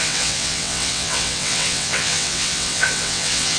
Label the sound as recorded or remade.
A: remade